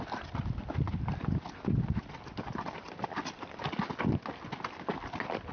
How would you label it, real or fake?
real